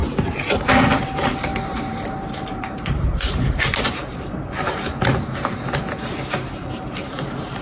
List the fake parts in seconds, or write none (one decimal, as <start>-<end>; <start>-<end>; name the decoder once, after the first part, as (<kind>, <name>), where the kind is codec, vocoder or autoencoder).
1.0-7.6 (vocoder, BigVGAN v2)

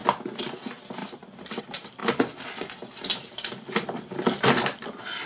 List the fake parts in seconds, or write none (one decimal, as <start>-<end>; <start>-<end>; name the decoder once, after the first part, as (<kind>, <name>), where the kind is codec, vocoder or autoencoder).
none

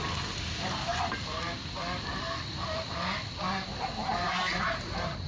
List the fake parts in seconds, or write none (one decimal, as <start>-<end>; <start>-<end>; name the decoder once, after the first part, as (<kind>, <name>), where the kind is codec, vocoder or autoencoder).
0.0-1.4 (vocoder, BigVGAN v2); 3.5-5.3

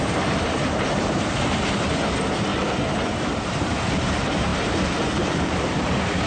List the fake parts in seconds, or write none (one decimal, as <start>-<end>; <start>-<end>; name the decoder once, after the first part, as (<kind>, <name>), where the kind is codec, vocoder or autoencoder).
0.0-2.5 (vocoder, BigVGAN v2); 3.4-6.3